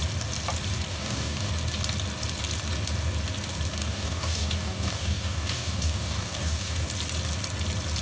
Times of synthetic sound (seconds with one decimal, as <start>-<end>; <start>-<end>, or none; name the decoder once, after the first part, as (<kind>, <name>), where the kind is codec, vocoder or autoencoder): 0.9-1.5 (codec, DAC); 3.8-6.9